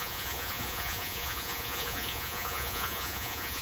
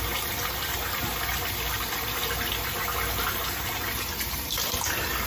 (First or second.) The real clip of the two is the second